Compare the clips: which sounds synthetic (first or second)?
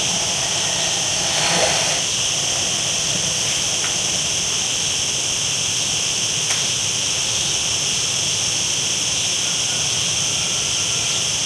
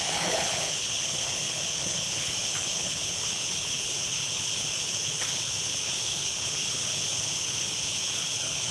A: second